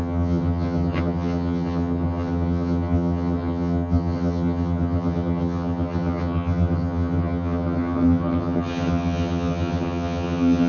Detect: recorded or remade remade